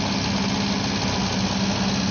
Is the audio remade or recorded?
recorded